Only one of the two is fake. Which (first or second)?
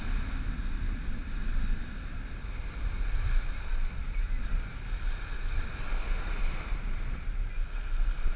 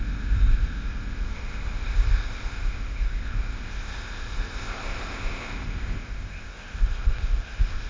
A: second